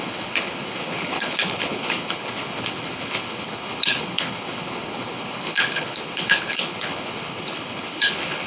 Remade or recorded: remade